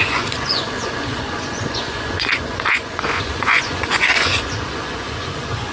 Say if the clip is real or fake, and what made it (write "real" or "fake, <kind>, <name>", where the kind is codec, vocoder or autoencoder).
fake, vocoder, Vocos